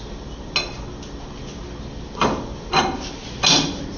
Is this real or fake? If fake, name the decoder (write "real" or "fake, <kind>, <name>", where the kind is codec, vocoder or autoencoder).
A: real